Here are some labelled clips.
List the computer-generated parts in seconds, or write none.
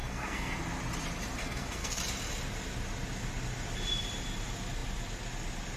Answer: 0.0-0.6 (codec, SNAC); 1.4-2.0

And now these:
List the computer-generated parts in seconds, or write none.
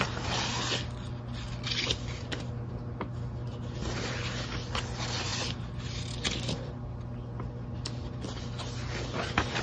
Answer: none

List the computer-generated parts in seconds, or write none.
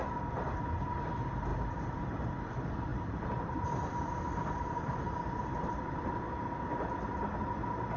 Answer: 1.5-2.5 (vocoder, BigVGAN v2); 2.9-6.1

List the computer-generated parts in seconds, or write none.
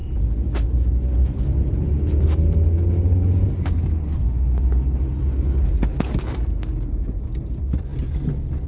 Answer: none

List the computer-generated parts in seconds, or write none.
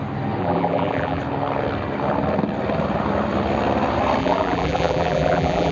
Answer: 0.4-1.2 (vocoder, BigVGAN v2); 4.2-5.7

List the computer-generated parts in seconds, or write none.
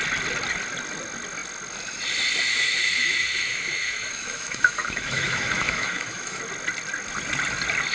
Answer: 2.5-6.4 (autoencoder, DAC-VAE)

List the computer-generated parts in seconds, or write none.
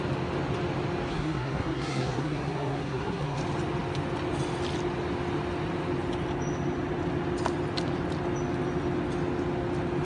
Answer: 1.1-3.4 (codec, SNAC)